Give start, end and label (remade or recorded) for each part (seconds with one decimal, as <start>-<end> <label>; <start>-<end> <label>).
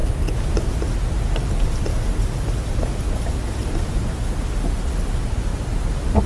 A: 0.0-6.3 recorded